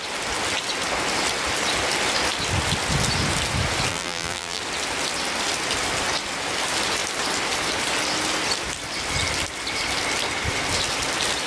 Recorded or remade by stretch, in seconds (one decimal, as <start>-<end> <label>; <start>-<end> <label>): 0.0-3.9 recorded; 3.9-4.6 remade; 4.6-11.5 recorded